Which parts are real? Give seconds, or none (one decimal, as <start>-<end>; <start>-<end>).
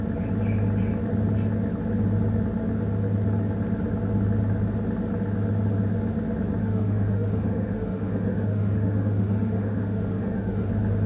0.0-6.6; 10.7-11.1